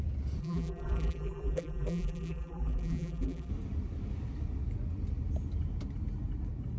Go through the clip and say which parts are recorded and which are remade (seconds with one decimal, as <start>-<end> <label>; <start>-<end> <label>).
0.0-0.4 recorded; 0.4-3.5 remade; 3.5-6.8 recorded